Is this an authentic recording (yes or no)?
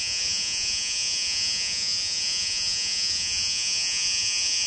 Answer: no